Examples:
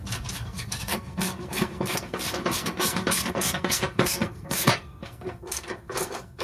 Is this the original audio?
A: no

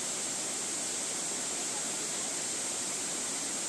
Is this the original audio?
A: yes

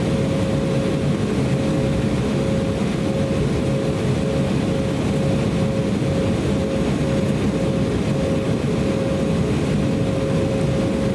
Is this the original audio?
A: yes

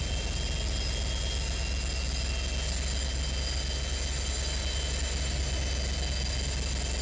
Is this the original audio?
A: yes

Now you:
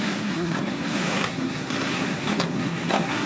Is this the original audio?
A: no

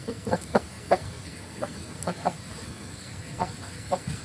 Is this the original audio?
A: no